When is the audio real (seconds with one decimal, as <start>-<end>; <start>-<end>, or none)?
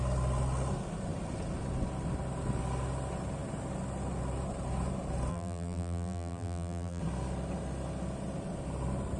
0.0-5.3; 7.0-9.2